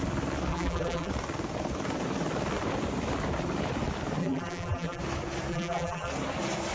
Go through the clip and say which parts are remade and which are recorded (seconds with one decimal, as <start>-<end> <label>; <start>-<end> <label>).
0.0-0.5 recorded; 0.5-1.1 remade; 1.1-4.2 recorded; 4.2-5.0 remade; 5.0-5.5 recorded; 5.5-6.1 remade; 6.1-6.7 recorded